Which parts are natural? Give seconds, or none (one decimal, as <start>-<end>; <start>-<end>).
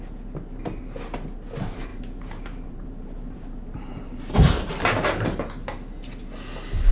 0.0-1.9; 4.7-6.9